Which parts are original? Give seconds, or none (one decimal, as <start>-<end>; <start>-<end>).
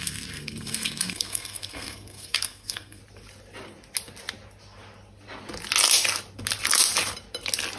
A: 3.0-7.8